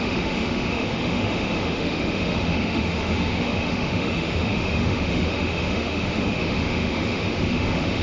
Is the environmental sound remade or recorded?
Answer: remade